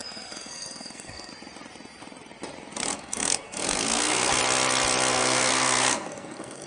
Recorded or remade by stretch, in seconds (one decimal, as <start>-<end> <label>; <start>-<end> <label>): 0.0-1.3 remade; 1.3-2.9 recorded; 2.9-4.4 remade; 4.4-5.1 recorded; 5.1-6.7 remade